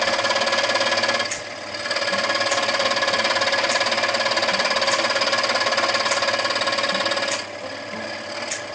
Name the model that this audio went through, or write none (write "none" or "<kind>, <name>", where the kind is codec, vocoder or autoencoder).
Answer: none